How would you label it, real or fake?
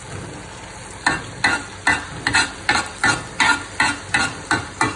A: real